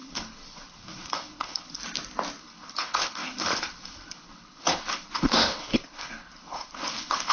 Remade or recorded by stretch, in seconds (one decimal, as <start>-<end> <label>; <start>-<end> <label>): 0.0-1.8 remade; 1.8-2.4 recorded; 2.4-7.3 remade